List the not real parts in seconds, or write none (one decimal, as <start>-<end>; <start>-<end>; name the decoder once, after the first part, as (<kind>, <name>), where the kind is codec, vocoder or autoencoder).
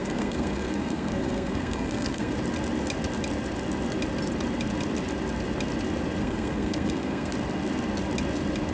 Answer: 0.0-2.3 (codec, SNAC); 6.2-7.3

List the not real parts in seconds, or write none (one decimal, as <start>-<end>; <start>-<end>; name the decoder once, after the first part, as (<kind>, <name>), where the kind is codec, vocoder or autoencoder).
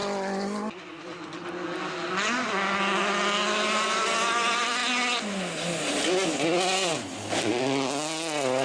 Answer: none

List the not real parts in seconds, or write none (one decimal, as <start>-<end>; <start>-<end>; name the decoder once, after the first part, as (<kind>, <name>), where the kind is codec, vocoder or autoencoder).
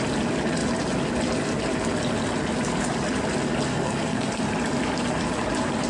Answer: 3.7-4.4 (codec, SNAC)